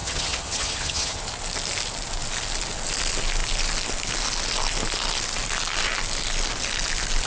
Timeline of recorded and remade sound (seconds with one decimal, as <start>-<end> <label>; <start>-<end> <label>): 0.0-1.2 remade; 1.2-7.3 recorded

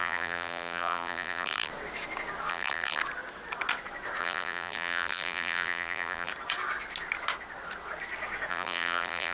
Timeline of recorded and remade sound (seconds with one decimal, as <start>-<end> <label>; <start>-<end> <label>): 0.0-1.7 remade; 1.7-2.5 recorded; 2.5-3.0 remade; 3.0-4.2 recorded; 4.2-6.3 remade; 6.3-8.5 recorded; 8.5-9.3 remade

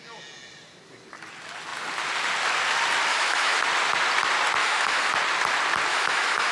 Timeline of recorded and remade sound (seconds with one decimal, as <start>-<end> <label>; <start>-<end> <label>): 0.0-3.1 recorded; 3.1-3.6 remade; 3.6-4.6 recorded; 4.6-5.1 remade; 5.1-5.9 recorded; 5.9-6.5 remade

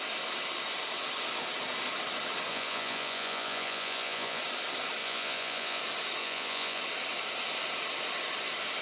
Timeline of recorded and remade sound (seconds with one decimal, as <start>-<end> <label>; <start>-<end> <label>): 0.0-2.5 recorded; 2.5-4.4 remade; 4.4-5.0 recorded; 5.0-5.8 remade; 5.8-6.2 recorded; 6.2-6.8 remade; 6.8-8.8 recorded

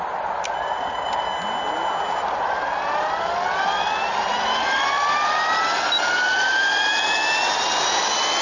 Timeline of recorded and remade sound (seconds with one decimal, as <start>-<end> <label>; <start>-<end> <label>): 0.0-8.4 recorded